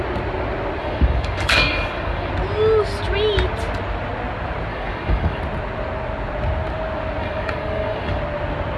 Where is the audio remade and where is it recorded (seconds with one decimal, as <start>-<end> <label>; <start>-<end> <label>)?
0.0-0.8 recorded; 0.8-2.3 remade; 2.3-4.7 recorded; 4.7-5.4 remade; 5.4-7.2 recorded; 7.2-8.2 remade; 8.2-8.8 recorded